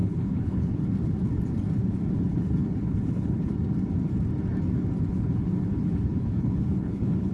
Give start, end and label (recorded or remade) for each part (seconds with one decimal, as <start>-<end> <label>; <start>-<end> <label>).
0.0-0.8 remade; 0.8-2.3 recorded; 2.3-3.5 remade; 3.5-5.1 recorded; 5.1-7.3 remade